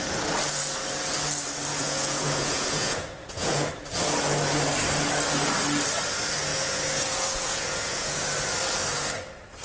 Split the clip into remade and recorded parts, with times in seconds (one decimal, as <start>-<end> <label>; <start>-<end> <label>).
0.0-1.7 recorded; 1.7-3.7 remade; 3.7-6.5 recorded; 6.5-8.2 remade; 8.2-9.6 recorded